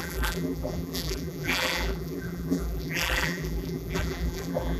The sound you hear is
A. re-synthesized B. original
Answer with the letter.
A